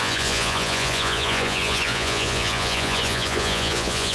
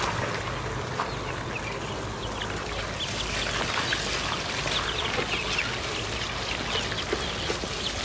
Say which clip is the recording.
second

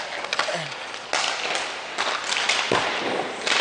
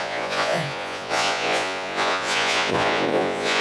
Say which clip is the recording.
first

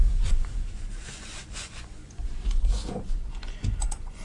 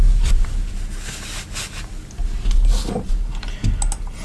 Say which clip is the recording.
second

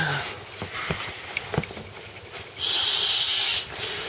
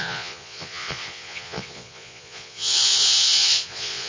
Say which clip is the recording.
first